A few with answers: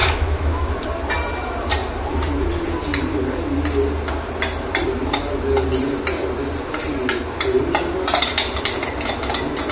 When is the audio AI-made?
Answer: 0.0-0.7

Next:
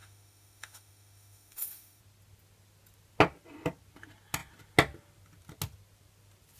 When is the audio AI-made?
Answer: 0.0-2.0